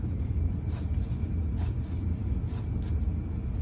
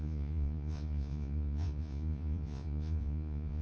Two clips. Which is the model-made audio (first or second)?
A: second